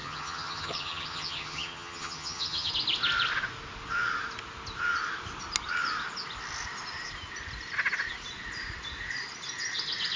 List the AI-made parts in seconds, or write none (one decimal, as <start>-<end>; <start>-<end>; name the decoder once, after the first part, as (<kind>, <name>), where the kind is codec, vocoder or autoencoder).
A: 0.0-2.7 (vocoder, HiFi-GAN)